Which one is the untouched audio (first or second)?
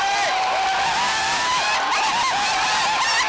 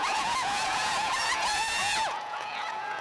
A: first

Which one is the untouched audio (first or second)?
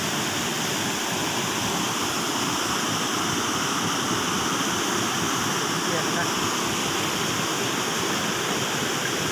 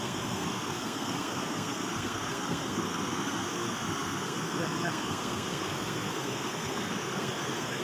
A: first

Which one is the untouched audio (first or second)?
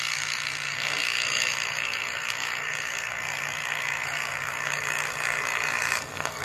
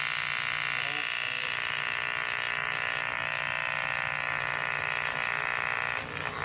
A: second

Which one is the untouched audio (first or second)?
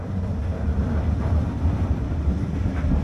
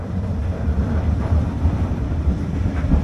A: first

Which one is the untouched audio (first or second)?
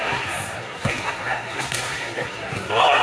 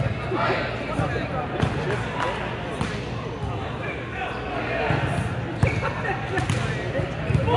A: second